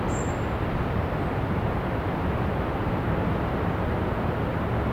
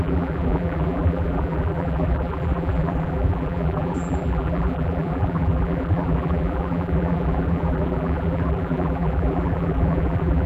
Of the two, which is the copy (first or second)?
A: second